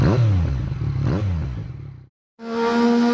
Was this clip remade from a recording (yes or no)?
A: no